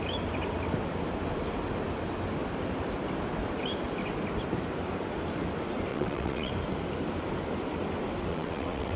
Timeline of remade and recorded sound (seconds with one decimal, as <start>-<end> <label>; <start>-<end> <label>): 0.0-5.9 recorded; 5.9-6.5 remade; 6.5-8.3 recorded; 8.3-9.0 remade